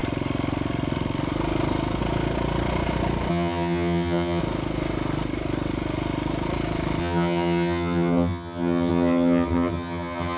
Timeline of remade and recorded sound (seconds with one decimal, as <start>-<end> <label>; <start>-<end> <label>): 0.0-3.3 recorded; 3.3-4.4 remade; 4.4-7.0 recorded; 7.0-10.4 remade